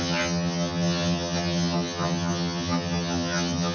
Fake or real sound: fake